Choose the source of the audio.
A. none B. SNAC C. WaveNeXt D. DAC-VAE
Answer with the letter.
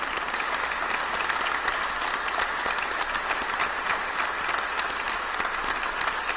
A